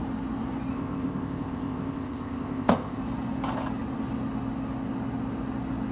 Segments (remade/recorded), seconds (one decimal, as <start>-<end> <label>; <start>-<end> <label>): 0.0-0.7 recorded; 0.7-3.0 remade; 3.0-5.9 recorded